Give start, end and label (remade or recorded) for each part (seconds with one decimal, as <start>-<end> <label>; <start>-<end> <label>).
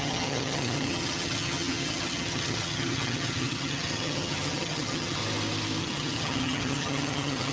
0.0-5.2 remade; 5.2-5.8 recorded; 5.8-7.5 remade